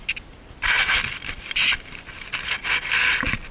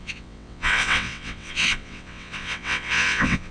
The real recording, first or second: first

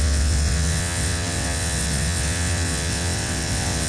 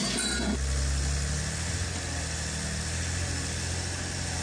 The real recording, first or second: second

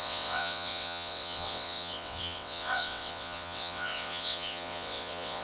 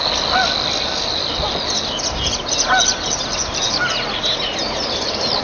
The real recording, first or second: second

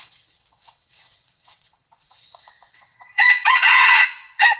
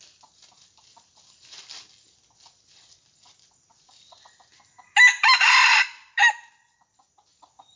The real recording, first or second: second